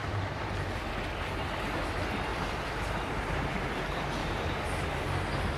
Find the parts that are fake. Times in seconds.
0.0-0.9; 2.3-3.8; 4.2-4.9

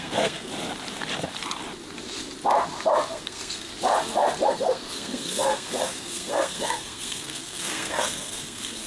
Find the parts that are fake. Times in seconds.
0.0-0.5; 3.1-3.7; 4.5-8.9

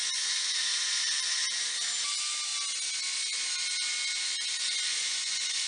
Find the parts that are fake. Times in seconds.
0.0-0.6; 4.9-5.7

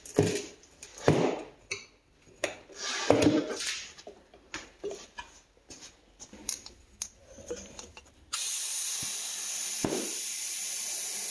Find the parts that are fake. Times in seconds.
3.5-5.2; 7.2-9.1

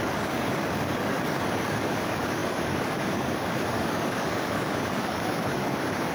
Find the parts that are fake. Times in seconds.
0.0-6.1

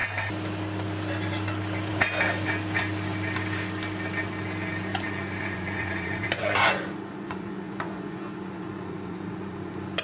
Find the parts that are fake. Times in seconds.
4.9-10.0